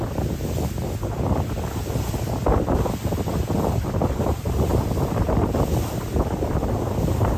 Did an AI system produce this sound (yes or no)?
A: no